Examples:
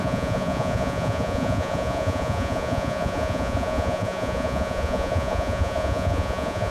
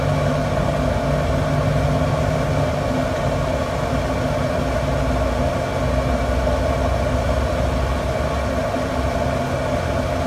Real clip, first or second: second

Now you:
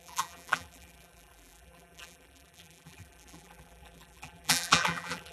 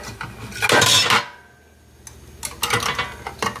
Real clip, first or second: second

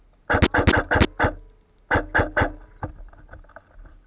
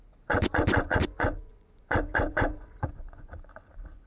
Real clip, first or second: first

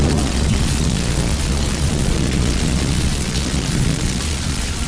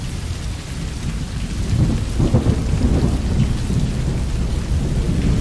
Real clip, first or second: second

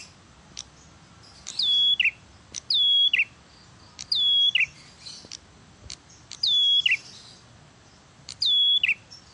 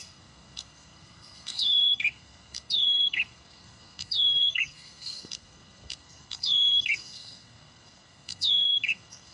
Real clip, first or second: first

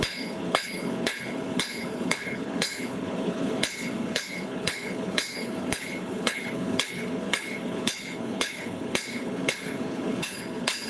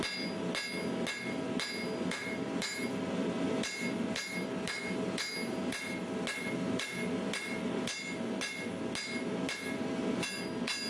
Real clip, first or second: second